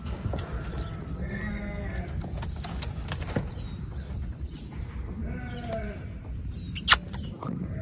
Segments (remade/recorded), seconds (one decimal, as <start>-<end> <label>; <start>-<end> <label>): 0.0-1.2 recorded; 1.2-2.0 remade; 2.0-7.8 recorded